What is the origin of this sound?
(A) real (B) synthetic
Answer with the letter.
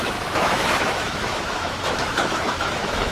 B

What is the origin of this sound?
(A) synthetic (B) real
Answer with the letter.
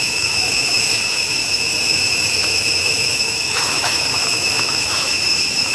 A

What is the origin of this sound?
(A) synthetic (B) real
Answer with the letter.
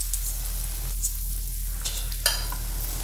B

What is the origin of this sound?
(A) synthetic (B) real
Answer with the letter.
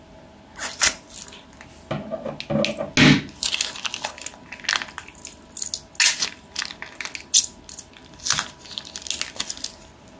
B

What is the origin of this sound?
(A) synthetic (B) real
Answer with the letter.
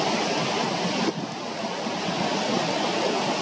B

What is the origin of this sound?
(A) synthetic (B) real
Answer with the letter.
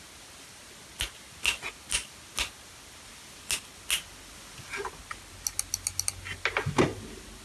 B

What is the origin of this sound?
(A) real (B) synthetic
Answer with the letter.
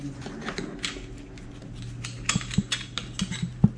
A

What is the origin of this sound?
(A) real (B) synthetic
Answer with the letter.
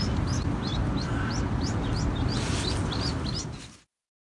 A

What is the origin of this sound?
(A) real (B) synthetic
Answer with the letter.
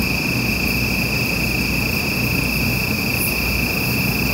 A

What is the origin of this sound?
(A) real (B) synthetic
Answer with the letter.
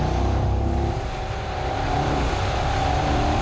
A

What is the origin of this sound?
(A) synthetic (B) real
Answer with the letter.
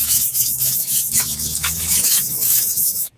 A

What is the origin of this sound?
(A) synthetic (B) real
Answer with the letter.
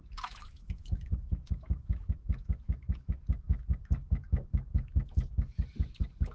A